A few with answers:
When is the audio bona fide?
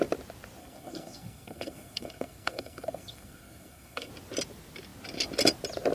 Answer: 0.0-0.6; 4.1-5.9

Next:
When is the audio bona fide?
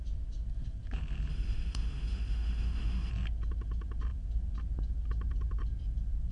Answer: 0.0-1.3; 3.1-6.3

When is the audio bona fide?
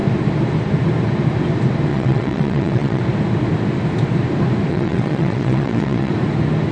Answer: 0.0-1.9; 3.0-4.7; 6.1-6.7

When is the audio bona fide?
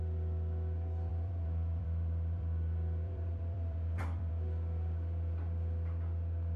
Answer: 0.0-1.1; 4.3-6.6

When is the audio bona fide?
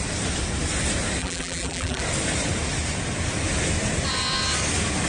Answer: 0.0-1.2; 2.0-5.1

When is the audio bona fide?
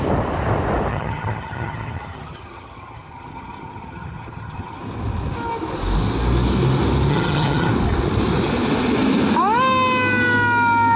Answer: 0.0-0.9; 4.8-7.1; 7.7-11.0